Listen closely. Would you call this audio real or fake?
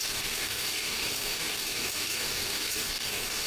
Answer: fake